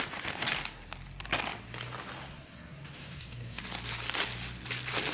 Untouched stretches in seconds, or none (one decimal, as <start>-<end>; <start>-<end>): 0.0-2.3; 3.6-5.1